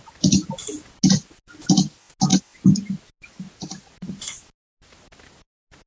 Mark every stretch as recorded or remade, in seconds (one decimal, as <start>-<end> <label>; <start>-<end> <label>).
0.0-5.9 recorded